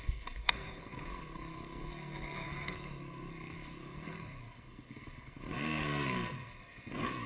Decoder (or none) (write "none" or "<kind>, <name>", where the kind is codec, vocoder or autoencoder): codec, SNAC